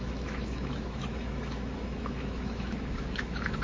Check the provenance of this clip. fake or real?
fake